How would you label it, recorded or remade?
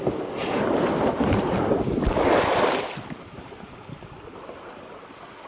recorded